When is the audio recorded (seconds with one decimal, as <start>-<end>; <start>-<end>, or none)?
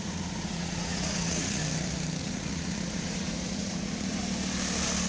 1.6-2.2; 4.2-5.1